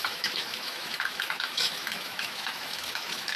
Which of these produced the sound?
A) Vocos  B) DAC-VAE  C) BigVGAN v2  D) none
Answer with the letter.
B